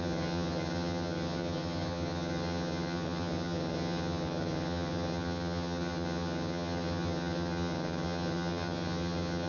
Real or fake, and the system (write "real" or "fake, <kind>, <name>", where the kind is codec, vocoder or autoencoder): fake, vocoder, HiFi-GAN